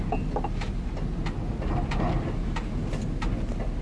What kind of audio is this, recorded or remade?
recorded